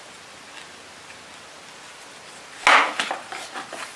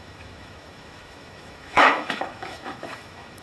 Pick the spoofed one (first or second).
second